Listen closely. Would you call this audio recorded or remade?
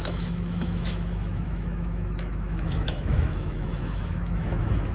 remade